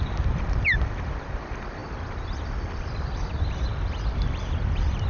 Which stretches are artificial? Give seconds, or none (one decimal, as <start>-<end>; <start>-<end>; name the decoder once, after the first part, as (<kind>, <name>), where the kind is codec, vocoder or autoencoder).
0.0-1.8 (vocoder, BigVGAN v2)